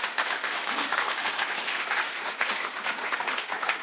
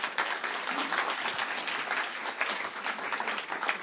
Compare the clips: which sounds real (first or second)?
second